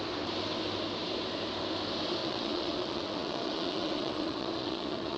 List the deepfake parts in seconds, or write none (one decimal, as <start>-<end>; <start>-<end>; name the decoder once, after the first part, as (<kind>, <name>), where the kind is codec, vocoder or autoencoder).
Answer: 2.2-5.2 (vocoder, Vocos)